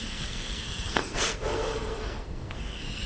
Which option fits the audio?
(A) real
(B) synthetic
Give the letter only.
B